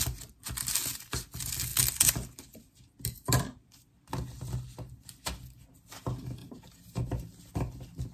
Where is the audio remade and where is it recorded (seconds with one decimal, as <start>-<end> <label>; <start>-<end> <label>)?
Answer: 0.0-6.4 recorded; 6.4-7.3 remade; 7.3-8.1 recorded